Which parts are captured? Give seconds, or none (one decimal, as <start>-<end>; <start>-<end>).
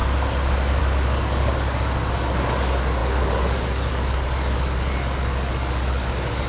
0.0-0.8